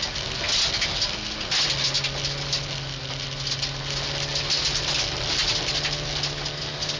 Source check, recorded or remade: recorded